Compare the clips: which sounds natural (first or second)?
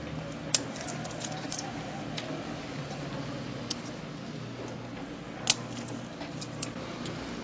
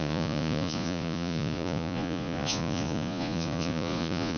first